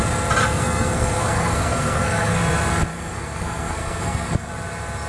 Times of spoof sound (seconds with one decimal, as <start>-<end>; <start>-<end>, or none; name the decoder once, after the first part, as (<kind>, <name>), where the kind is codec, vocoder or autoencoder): 0.4-2.4 (codec, SNAC); 2.9-4.5